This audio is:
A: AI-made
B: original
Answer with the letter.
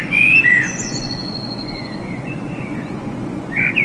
A